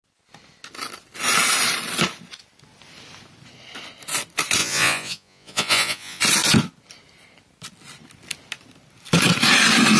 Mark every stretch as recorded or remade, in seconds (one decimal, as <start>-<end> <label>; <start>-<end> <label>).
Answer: 0.0-4.6 recorded; 4.6-6.2 remade; 6.2-10.0 recorded